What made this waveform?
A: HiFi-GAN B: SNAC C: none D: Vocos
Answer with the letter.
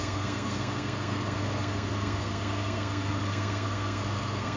B